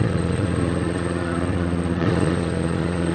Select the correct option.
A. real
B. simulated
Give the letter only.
B